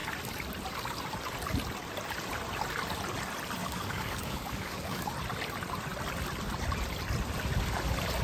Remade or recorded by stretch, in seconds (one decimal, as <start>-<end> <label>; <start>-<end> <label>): 0.0-3.6 recorded; 3.6-5.1 remade; 5.1-8.2 recorded